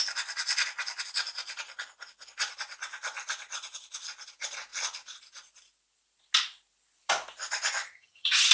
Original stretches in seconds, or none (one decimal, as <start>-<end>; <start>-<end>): 0.0-7.8

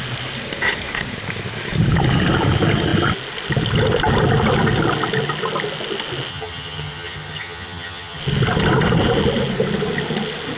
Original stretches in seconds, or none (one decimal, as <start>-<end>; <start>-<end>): 0.0-6.3; 8.2-10.6

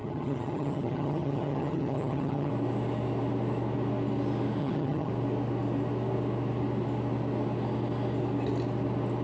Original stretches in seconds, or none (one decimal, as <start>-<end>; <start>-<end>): 2.5-4.6; 5.1-9.2

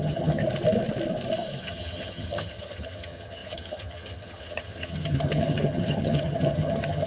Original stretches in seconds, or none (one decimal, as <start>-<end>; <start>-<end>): 0.4-1.6

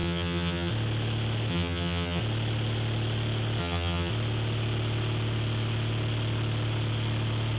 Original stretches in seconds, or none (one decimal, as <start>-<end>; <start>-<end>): 0.7-1.5; 2.2-3.6; 4.1-7.6